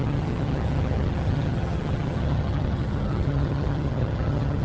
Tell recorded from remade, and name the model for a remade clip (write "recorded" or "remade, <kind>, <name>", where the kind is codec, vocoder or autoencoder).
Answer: remade, vocoder, HiFi-GAN